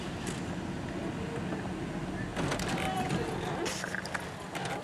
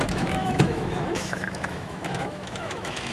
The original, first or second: first